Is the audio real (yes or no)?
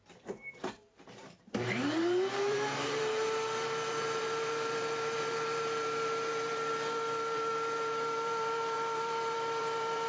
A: no